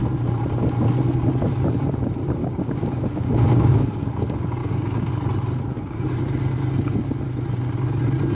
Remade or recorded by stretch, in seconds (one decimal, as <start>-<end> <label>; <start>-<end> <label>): 0.0-2.4 recorded; 2.4-4.1 remade; 4.1-4.6 recorded; 4.6-5.1 remade; 5.1-8.3 recorded